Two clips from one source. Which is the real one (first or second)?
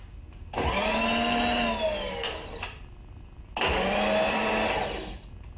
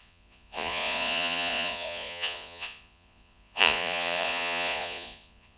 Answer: first